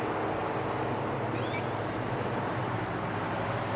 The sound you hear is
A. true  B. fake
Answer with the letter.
A